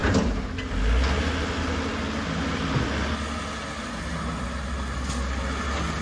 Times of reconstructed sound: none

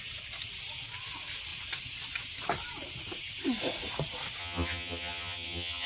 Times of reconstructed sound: 4.4-5.9 (vocoder, HiFi-GAN)

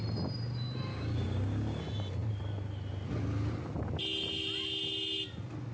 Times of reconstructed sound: 0.9-1.8 (codec, DAC)